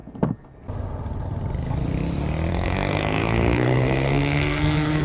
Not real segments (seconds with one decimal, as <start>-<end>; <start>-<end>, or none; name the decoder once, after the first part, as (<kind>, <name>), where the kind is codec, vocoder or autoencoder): 2.5-5.0 (codec, SNAC)